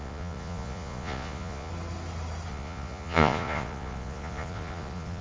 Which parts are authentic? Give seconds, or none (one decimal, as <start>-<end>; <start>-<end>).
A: 1.7-2.5